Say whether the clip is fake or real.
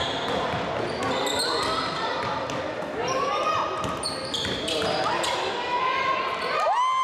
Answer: real